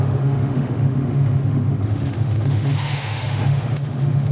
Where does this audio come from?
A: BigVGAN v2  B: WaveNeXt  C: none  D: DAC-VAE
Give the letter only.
D